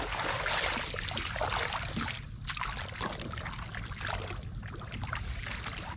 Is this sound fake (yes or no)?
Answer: no